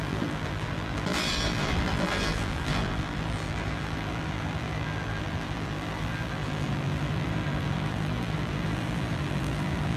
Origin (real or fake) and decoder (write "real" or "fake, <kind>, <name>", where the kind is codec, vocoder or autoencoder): fake, vocoder, BigVGAN v2